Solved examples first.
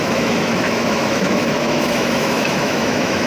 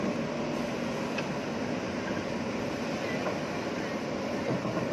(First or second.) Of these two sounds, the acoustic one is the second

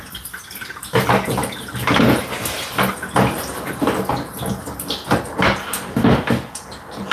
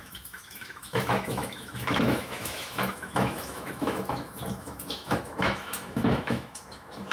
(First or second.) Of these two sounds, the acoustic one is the first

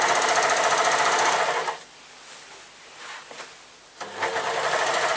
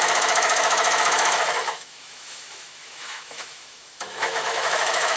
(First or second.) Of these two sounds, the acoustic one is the first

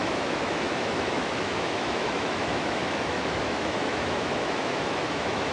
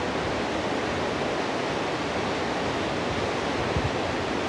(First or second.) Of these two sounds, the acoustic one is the second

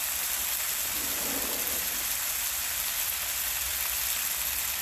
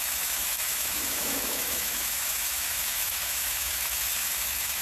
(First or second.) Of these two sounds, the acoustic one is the first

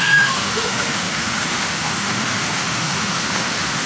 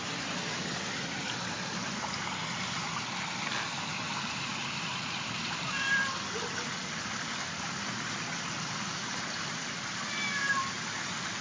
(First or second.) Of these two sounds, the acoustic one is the second